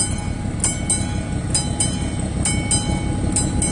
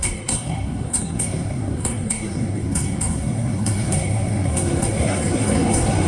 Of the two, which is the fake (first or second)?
second